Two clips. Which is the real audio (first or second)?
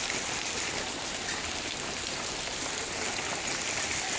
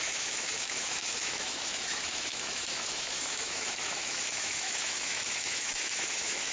first